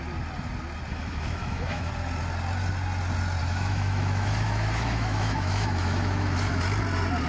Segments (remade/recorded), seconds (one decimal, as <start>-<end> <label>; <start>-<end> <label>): 0.0-0.9 recorded; 0.9-1.9 remade; 1.9-3.4 recorded; 3.4-6.6 remade; 6.6-7.3 recorded